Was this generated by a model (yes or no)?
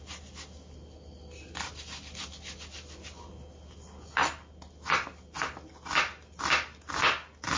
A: no